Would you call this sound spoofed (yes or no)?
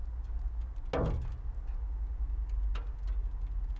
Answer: no